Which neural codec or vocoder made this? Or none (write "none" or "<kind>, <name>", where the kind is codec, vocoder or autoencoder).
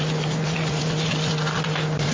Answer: none